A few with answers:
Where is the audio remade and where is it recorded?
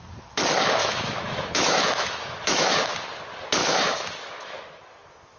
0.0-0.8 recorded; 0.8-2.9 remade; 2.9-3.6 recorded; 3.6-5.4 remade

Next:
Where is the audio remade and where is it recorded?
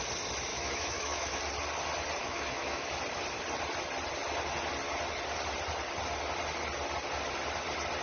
0.0-0.5 recorded; 0.5-1.4 remade; 1.4-2.2 recorded; 2.2-2.9 remade; 2.9-8.0 recorded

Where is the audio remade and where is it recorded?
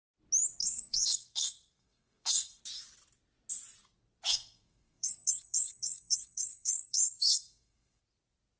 0.0-0.6 recorded; 0.6-2.6 remade; 2.6-4.3 recorded; 4.3-8.0 remade; 8.0-8.6 recorded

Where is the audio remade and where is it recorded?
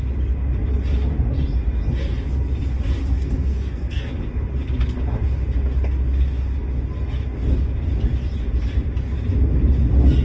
0.0-3.0 recorded; 3.0-4.1 remade; 4.1-10.2 recorded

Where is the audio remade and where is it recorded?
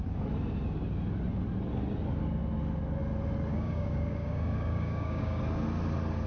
0.0-3.5 recorded; 3.5-5.4 remade; 5.4-6.3 recorded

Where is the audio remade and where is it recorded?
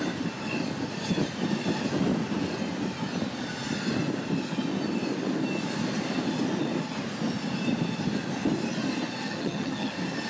0.0-9.2 recorded; 9.2-9.9 remade; 9.9-10.3 recorded